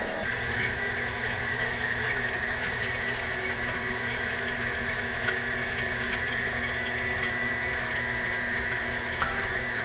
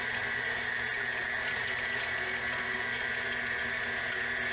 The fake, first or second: first